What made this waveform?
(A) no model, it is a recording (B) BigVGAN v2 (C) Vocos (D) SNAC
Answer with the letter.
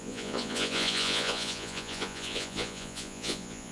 C